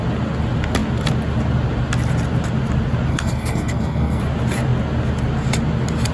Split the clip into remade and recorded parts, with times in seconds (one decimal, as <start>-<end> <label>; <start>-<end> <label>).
0.0-3.1 recorded; 3.1-4.2 remade; 4.2-6.1 recorded